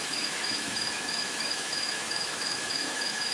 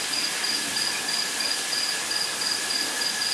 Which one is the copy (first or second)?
first